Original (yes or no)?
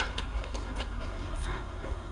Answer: no